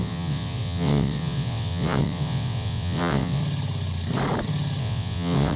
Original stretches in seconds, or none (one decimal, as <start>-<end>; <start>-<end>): 3.4-4.8